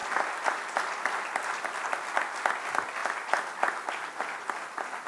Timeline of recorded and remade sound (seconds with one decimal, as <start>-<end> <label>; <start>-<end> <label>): 0.0-5.1 recorded